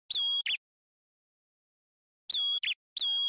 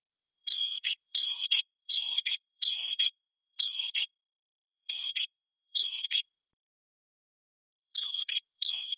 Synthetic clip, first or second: second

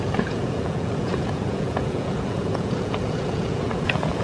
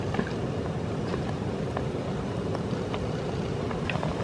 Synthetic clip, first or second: first